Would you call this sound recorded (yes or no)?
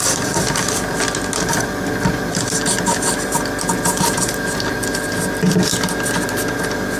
yes